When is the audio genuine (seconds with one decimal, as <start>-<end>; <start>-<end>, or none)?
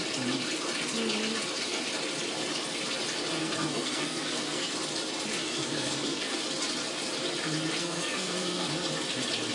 0.0-3.4; 4.7-5.4; 6.4-7.8; 8.7-9.5